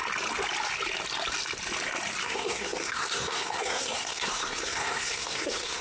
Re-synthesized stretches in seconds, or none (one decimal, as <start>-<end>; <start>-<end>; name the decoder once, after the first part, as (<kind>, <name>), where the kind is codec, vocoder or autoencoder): 2.2-5.8 (codec, SNAC)